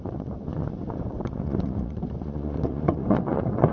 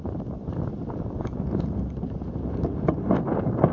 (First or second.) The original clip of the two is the second